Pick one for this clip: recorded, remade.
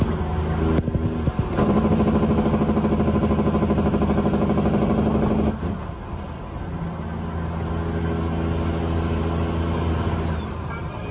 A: recorded